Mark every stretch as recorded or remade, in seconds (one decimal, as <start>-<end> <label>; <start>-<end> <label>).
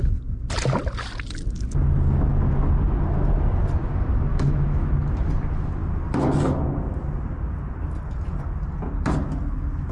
0.0-4.3 recorded; 4.3-4.9 remade; 4.9-9.9 recorded